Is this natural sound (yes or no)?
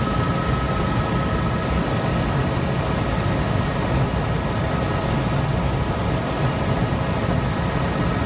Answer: yes